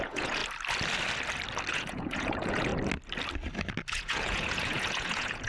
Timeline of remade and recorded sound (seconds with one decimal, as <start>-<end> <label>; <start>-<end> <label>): 0.0-0.4 remade; 0.4-1.7 recorded; 1.7-2.7 remade; 2.7-3.9 recorded; 3.9-5.5 remade